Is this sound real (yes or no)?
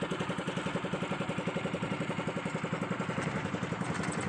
yes